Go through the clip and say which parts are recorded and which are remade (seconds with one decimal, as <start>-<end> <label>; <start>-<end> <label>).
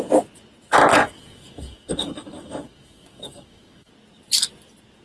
0.0-0.9 recorded; 0.9-3.9 remade; 3.9-5.0 recorded